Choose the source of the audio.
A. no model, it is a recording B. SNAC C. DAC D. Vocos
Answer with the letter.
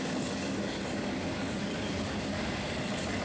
C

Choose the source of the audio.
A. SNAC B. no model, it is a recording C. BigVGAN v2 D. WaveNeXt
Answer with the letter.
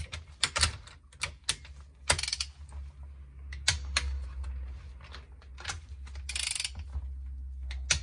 B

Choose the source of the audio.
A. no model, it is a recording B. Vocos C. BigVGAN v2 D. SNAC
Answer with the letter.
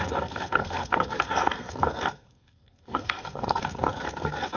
D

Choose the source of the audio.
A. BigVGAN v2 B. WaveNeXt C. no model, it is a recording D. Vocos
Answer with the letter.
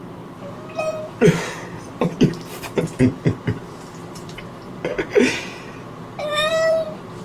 A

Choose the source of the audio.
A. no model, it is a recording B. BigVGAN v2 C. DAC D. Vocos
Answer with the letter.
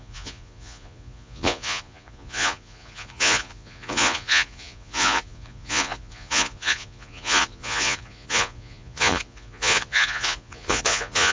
D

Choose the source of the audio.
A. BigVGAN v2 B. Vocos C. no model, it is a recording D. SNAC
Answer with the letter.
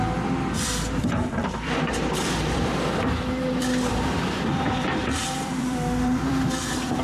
A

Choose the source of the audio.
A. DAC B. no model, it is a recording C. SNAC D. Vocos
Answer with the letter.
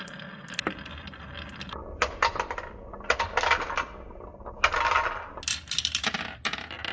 B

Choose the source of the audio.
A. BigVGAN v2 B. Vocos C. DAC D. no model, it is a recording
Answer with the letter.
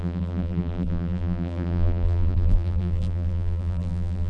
A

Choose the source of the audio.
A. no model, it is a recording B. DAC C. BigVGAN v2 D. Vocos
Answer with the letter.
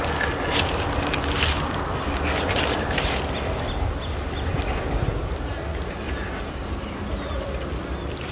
A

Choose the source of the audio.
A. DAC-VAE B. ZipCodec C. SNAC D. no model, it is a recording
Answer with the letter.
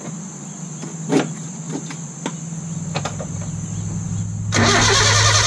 D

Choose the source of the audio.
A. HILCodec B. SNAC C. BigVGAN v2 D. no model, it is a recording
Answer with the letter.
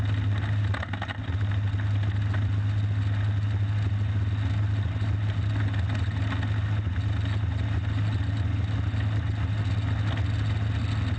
D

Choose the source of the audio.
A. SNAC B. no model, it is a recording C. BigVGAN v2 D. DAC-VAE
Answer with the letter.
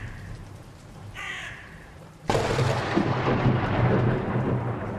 C